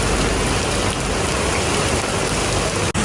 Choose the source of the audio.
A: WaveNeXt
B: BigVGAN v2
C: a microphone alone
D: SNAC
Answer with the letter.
C